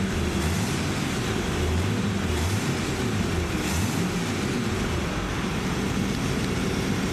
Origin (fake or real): real